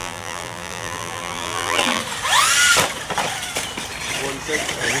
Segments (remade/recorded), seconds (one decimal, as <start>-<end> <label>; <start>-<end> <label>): 0.0-2.0 remade; 2.0-5.0 recorded